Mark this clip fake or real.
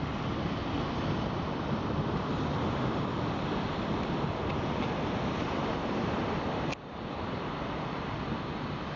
real